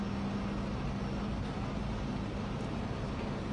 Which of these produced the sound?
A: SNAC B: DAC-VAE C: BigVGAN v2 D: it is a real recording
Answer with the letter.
D